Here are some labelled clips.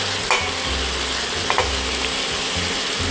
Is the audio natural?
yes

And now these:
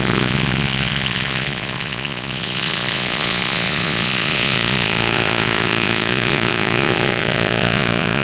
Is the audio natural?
no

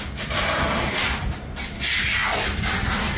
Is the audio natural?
yes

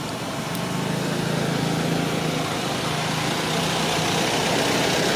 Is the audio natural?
yes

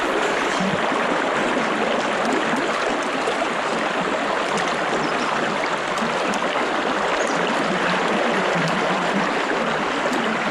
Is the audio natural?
yes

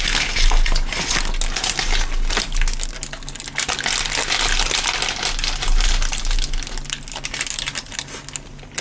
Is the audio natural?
yes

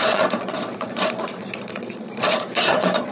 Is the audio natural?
no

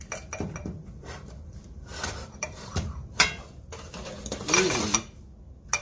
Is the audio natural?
yes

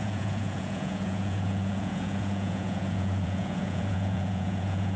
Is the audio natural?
no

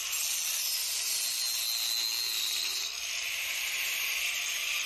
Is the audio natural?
yes